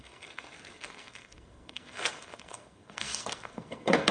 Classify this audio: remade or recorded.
remade